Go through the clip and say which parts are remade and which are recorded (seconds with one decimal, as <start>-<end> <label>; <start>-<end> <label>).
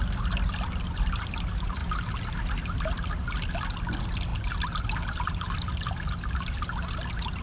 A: 0.0-7.4 recorded